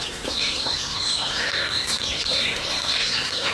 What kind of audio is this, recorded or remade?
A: remade